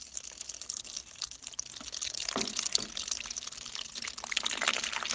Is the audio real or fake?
real